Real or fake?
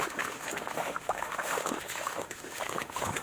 fake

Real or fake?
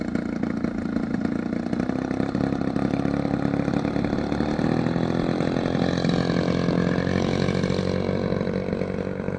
real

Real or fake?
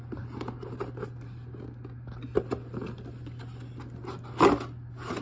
real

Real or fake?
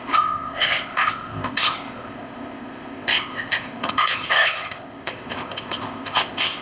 fake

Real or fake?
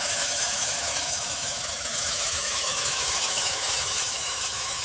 fake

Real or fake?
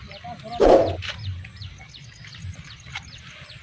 real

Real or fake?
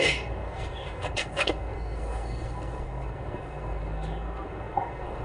fake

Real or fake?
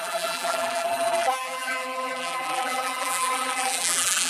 fake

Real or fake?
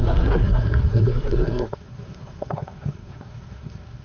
fake